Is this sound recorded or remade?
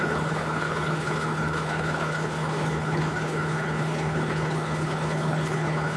remade